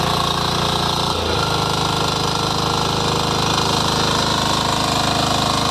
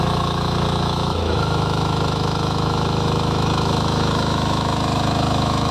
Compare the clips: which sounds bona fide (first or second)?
first